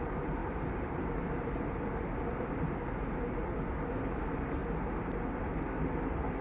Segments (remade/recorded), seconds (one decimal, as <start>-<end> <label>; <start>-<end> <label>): 0.0-3.4 remade; 3.4-4.1 recorded; 4.1-4.6 remade; 4.6-6.4 recorded